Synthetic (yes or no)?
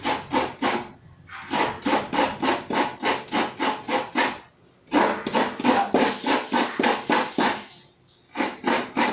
no